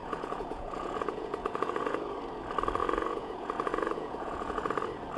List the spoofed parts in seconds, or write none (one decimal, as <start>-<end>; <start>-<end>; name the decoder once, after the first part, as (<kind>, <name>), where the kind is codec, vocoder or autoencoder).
0.0-2.0 (vocoder, Vocos); 2.8-4.7